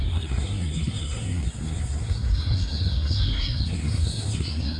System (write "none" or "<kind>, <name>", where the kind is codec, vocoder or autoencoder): codec, SNAC